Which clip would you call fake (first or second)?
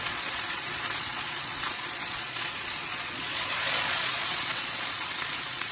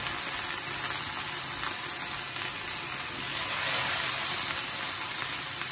first